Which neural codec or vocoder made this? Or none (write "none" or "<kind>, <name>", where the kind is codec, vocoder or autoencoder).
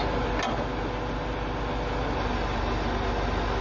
none